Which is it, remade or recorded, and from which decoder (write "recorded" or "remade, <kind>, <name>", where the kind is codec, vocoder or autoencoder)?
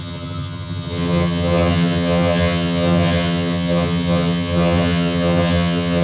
remade, vocoder, HiFi-GAN